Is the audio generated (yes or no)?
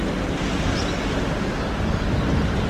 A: no